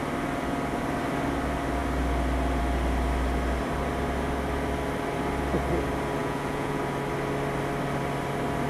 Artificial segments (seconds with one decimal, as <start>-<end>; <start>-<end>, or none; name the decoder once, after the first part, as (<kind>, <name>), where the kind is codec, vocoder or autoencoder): 6.2-6.8 (vocoder, Vocos)